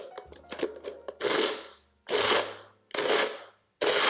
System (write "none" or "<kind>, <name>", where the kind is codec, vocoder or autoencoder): none